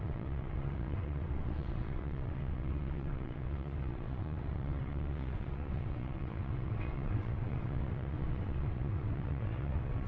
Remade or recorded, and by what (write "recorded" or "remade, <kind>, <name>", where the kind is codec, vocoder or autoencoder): remade, vocoder, WaveNeXt